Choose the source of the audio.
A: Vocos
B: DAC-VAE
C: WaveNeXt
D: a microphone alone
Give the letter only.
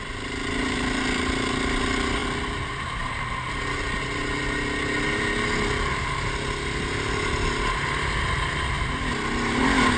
D